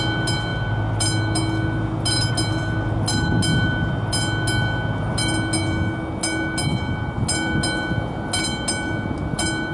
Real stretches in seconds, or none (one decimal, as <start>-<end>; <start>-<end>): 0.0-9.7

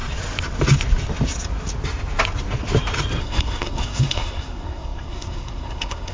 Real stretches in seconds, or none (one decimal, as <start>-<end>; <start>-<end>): 0.0-3.2

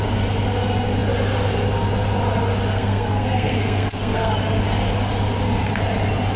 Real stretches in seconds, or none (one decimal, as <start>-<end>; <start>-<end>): 0.0-2.7; 4.3-6.4

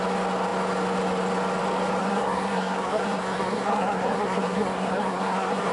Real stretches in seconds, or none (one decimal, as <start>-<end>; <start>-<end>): 0.0-2.0

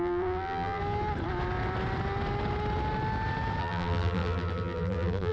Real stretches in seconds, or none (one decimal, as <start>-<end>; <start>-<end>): 0.8-3.6